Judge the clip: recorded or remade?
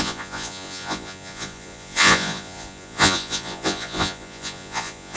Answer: remade